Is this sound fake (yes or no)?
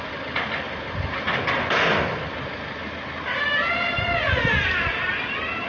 no